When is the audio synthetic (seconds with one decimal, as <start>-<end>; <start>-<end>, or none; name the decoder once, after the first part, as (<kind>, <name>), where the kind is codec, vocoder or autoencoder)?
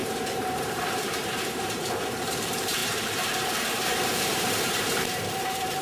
0.0-5.8 (vocoder, BigVGAN v2)